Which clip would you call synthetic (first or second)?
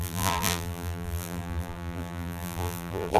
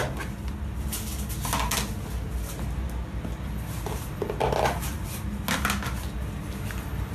first